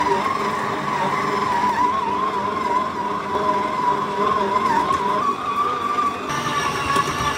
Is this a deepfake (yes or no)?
no